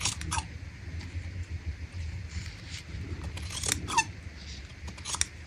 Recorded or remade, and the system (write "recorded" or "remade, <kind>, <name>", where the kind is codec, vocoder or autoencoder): recorded